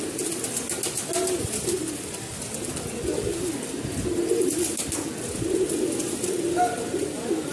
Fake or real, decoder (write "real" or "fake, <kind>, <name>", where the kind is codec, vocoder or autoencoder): real